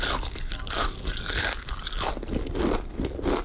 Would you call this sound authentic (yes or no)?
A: yes